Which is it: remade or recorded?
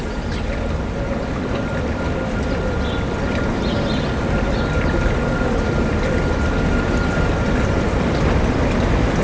recorded